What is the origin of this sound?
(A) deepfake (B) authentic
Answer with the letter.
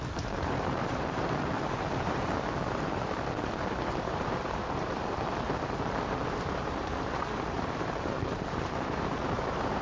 A